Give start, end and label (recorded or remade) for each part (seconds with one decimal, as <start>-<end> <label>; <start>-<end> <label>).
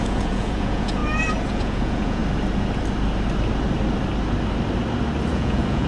0.0-1.0 remade; 1.0-1.5 recorded; 1.5-2.2 remade; 2.2-5.3 recorded; 5.3-5.9 remade